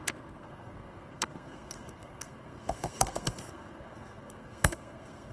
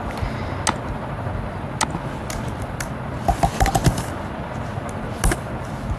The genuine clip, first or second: second